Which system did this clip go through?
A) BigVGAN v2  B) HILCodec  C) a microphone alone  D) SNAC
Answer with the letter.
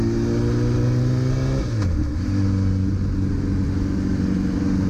C